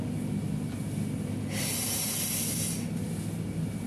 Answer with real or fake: real